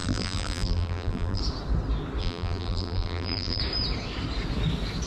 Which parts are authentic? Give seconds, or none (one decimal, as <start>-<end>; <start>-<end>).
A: 1.4-2.2; 3.6-5.1